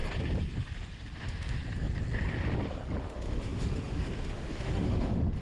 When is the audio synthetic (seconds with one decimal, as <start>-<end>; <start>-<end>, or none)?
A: 1.2-1.6; 3.0-5.4